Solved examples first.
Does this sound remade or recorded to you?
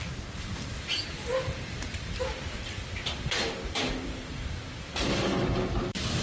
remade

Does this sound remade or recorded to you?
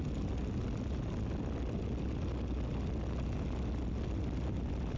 recorded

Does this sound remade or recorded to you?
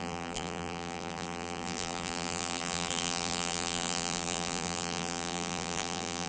remade